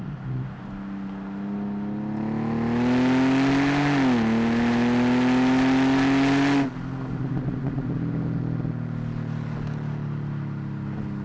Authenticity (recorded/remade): recorded